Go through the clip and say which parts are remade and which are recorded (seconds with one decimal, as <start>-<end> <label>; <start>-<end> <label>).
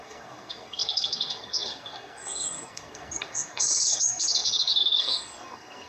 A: 0.0-5.9 remade